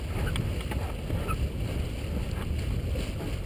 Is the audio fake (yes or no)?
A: no